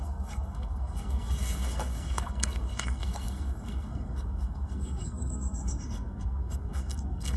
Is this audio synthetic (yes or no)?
yes